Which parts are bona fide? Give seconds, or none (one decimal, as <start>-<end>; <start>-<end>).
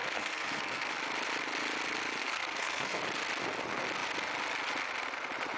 0.9-2.2; 3.0-5.6